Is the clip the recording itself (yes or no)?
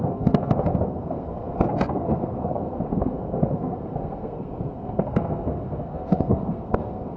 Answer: no